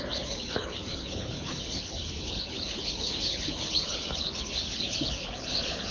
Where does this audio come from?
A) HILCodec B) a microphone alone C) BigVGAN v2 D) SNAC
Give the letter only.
A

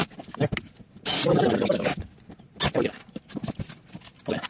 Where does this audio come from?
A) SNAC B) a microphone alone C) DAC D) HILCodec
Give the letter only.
B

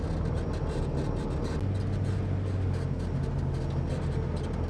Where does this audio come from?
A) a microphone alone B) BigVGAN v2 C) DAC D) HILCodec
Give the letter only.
A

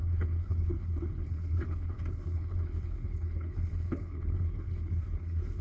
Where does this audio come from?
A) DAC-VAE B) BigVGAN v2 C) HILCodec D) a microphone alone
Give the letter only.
C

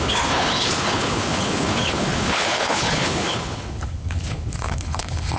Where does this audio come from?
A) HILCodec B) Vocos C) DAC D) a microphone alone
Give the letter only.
A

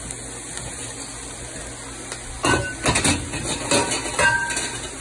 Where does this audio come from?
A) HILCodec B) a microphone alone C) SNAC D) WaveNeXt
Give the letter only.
B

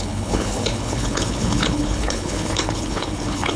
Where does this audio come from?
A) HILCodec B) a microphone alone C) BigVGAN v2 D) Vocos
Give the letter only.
A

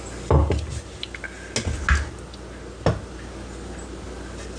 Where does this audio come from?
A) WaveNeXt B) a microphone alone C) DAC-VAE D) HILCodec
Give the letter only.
B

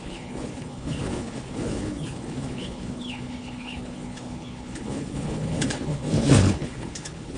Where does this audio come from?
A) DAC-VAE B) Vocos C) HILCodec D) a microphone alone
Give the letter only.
C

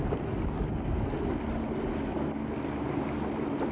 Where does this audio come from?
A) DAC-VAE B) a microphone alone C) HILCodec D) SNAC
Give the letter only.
B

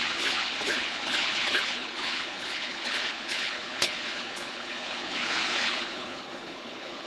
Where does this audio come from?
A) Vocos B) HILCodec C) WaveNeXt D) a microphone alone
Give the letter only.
B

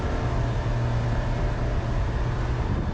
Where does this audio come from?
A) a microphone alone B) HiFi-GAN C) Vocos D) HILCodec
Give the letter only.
A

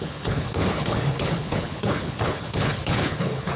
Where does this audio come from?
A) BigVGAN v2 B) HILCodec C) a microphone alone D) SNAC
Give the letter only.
B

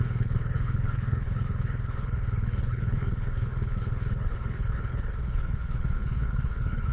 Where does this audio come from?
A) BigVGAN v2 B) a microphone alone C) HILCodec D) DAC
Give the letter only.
C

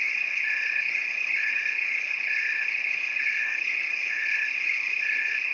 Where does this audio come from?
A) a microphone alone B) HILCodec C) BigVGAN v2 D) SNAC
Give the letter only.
B